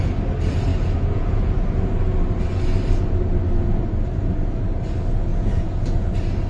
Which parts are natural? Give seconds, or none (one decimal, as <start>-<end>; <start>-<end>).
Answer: 0.0-0.7; 1.6-5.3; 6.1-6.5